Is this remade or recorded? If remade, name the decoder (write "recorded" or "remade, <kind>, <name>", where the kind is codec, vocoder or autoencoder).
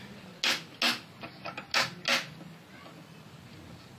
recorded